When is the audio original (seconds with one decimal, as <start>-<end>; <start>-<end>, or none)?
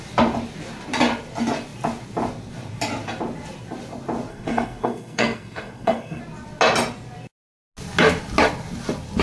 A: 0.0-4.3; 6.2-9.2